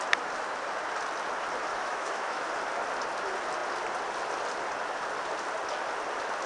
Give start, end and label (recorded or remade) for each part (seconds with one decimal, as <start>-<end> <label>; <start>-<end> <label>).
0.0-1.7 recorded; 1.7-2.5 remade; 2.5-6.5 recorded